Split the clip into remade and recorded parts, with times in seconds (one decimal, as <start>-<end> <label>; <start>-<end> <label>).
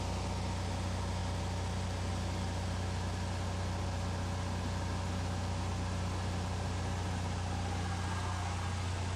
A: 0.0-9.2 recorded